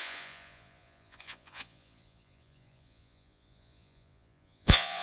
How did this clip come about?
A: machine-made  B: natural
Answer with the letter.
A